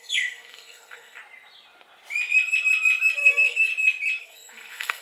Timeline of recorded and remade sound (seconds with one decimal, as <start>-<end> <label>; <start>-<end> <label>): 0.0-1.2 remade; 1.2-3.1 recorded; 3.1-3.7 remade; 3.7-4.2 recorded; 4.2-5.0 remade